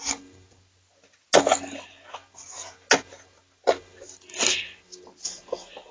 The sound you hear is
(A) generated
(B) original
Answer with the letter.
B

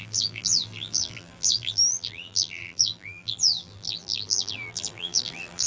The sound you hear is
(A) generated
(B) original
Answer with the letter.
A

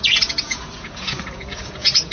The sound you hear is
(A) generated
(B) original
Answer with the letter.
A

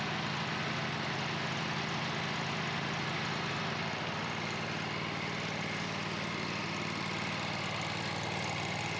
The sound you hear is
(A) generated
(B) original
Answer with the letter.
B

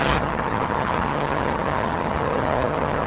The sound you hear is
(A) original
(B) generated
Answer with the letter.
B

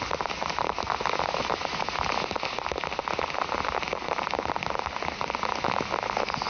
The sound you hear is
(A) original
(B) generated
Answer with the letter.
A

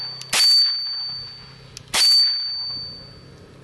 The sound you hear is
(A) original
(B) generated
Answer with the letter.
A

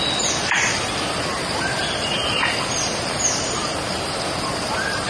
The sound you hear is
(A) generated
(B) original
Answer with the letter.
B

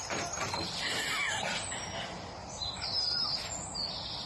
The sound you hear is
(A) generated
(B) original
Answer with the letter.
B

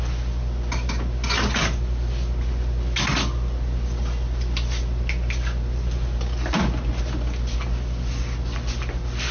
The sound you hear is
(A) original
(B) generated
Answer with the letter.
A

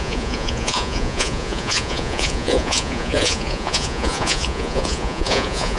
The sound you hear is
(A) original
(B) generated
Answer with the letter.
B